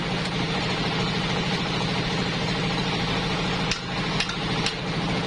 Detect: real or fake real